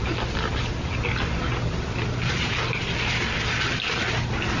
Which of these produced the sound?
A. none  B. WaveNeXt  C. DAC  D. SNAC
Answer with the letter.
A